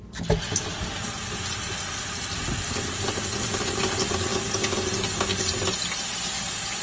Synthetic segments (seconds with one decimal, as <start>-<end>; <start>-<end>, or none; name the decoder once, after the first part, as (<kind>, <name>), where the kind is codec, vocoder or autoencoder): none